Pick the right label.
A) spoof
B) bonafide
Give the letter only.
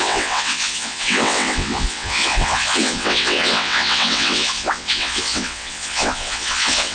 A